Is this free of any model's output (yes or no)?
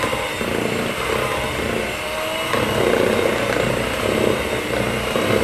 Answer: yes